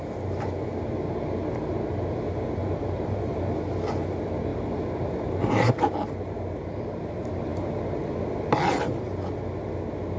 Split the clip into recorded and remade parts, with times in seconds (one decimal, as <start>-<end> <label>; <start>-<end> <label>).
0.0-2.6 recorded; 2.6-3.2 remade; 3.2-4.5 recorded; 4.5-6.8 remade; 6.8-10.2 recorded